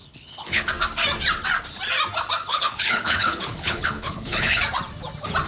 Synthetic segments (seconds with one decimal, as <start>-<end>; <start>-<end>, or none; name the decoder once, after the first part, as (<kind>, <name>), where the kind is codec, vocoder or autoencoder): 0.0-0.7 (codec, HILCodec); 2.5-4.6